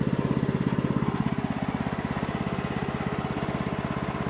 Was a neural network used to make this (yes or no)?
no